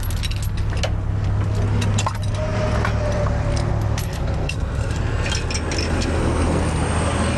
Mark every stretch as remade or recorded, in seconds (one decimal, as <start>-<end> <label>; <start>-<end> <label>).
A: 0.0-4.4 recorded; 4.4-5.0 remade; 5.0-5.8 recorded; 5.8-6.6 remade; 6.6-7.4 recorded